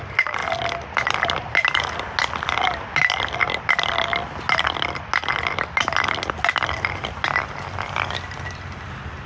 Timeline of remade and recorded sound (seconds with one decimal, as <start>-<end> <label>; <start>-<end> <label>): 0.0-9.3 recorded